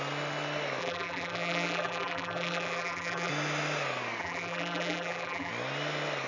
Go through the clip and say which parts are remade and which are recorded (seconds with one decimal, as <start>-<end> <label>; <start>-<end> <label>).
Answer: 0.0-0.8 recorded; 0.8-3.3 remade; 3.3-4.2 recorded; 4.2-5.5 remade; 5.5-6.3 recorded